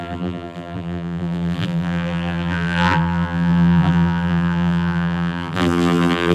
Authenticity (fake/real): fake